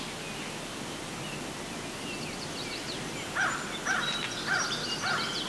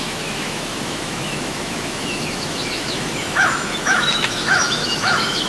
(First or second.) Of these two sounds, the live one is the first